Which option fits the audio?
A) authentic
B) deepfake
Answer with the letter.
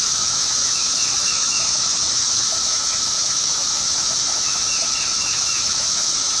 B